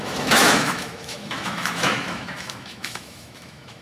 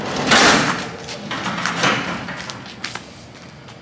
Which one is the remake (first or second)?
first